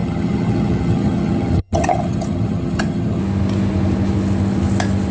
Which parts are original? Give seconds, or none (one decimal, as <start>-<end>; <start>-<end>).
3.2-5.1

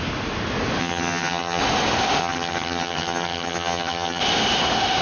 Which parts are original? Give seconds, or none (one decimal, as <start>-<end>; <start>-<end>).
0.0-0.8; 1.6-2.2; 4.2-5.0

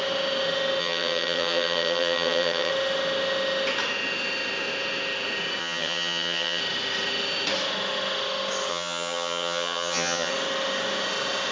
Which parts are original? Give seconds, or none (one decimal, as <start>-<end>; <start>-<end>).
0.0-0.8; 2.7-5.6; 6.6-8.7; 10.3-11.5

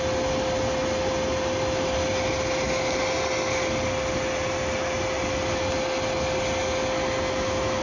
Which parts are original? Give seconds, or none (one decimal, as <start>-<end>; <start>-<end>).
0.0-7.8